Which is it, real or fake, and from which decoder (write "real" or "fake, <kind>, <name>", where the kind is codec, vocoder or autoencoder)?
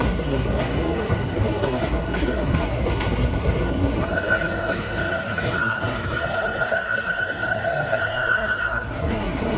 fake, codec, SNAC